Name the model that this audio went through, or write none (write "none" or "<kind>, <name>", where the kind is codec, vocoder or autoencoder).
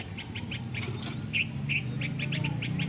none